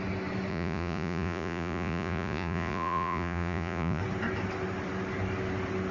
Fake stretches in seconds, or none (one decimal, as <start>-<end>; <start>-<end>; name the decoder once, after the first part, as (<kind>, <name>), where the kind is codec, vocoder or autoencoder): 0.5-4.0 (vocoder, Vocos)

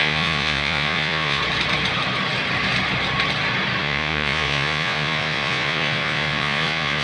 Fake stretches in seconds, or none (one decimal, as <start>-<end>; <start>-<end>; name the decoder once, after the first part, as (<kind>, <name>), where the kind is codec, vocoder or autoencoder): 0.0-1.4 (vocoder, Vocos); 3.8-7.0

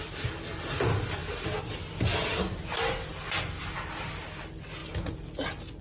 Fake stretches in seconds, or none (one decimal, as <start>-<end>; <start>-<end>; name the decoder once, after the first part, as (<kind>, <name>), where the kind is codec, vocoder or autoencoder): none

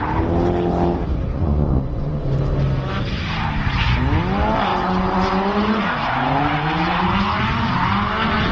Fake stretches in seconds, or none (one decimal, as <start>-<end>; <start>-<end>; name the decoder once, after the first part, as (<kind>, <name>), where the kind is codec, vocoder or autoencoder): 1.3-2.4 (vocoder, Vocos); 4.7-5.8

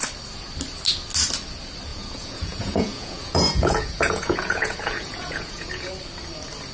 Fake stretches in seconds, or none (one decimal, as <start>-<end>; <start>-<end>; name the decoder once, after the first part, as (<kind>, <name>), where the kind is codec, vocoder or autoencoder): 1.9-5.9 (vocoder, Vocos)

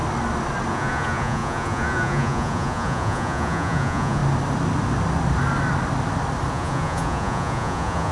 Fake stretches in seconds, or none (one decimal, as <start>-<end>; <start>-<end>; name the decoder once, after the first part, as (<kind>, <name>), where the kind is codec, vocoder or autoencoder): 0.7-4.2 (vocoder, Vocos); 6.5-8.1

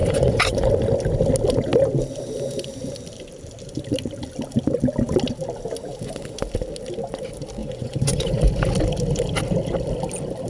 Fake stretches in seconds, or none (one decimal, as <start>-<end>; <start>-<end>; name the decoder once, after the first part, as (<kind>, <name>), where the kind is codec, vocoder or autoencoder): 0.0-0.7 (vocoder, Vocos); 7.6-8.5